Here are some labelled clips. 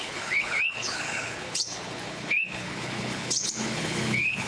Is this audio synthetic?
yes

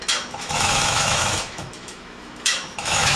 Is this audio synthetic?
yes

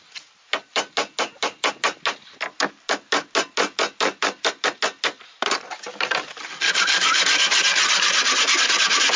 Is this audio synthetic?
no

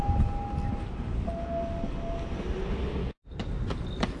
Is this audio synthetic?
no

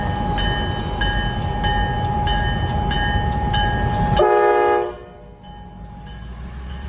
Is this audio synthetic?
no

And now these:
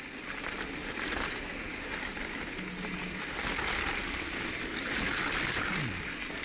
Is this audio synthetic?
no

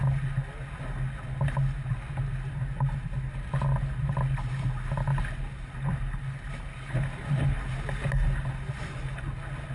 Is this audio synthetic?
no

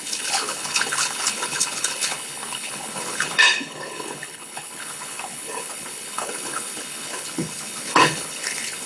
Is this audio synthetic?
yes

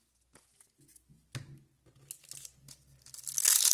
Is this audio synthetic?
no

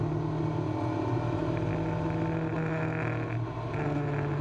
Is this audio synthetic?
no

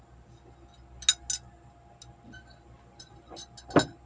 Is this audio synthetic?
no